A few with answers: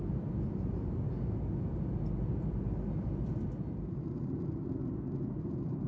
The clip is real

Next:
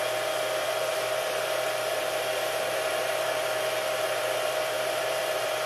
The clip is fake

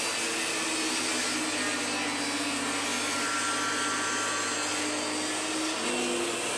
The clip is real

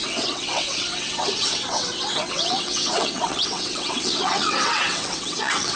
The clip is fake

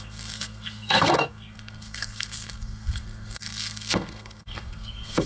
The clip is fake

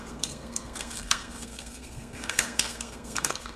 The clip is fake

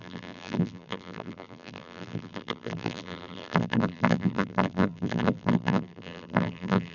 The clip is fake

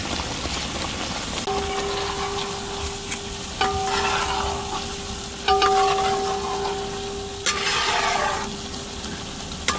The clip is real